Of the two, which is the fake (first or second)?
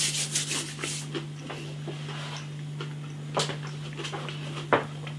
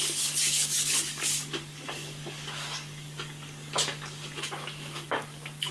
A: second